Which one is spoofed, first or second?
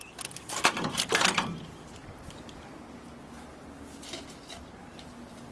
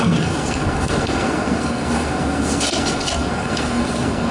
second